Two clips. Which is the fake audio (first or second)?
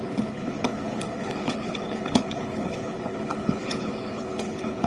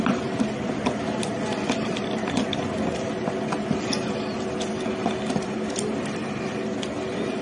first